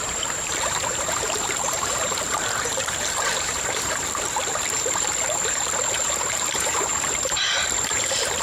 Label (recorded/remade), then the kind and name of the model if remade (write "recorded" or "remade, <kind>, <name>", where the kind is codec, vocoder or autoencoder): remade, vocoder, BigVGAN v2